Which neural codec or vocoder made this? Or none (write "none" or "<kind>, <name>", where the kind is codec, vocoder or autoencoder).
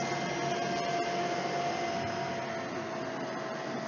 none